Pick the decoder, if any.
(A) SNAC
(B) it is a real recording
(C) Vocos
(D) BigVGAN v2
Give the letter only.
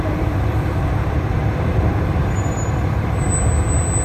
D